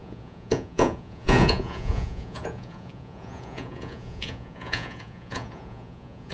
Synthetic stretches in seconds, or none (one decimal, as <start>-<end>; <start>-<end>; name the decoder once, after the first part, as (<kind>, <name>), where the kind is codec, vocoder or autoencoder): 0.0-6.3 (vocoder, Vocos)